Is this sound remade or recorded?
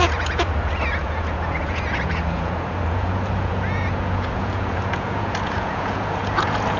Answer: remade